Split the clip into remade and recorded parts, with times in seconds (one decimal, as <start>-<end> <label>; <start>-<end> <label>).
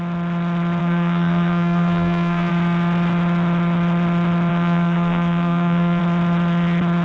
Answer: 0.0-0.8 recorded; 0.8-2.5 remade; 2.5-4.5 recorded; 4.5-6.0 remade; 6.0-7.0 recorded